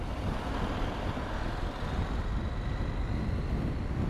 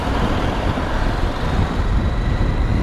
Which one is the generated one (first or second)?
second